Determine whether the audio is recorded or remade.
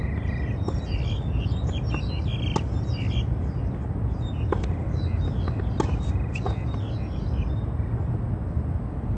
recorded